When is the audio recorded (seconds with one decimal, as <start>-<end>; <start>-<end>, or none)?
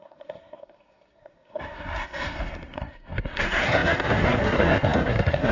none